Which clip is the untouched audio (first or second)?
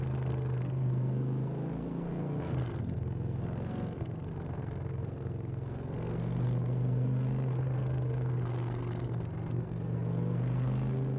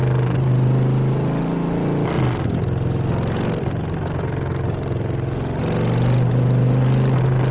second